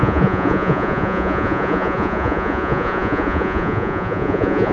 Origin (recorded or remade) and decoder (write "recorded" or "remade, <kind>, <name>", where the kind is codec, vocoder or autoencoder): remade, vocoder, Vocos